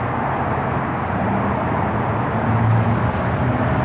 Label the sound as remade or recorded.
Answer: recorded